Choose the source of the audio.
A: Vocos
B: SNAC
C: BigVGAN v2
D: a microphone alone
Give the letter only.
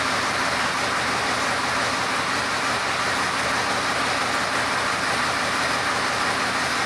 D